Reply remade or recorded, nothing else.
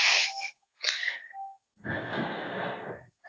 remade